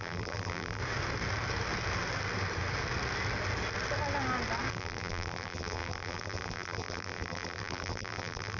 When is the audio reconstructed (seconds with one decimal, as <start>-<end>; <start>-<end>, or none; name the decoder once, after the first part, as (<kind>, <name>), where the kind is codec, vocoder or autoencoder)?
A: 0.0-0.8 (vocoder, BigVGAN v2); 4.7-8.6